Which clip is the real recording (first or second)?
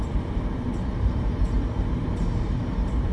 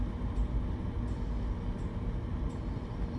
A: second